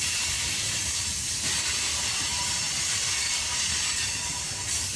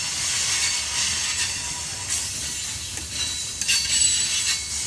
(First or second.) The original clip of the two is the second